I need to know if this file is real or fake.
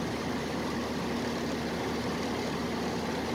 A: real